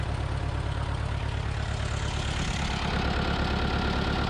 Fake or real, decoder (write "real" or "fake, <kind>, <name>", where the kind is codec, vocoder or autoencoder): real